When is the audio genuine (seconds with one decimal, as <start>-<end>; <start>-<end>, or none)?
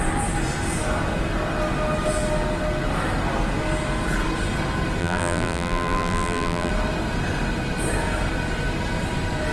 0.0-5.0; 6.7-9.5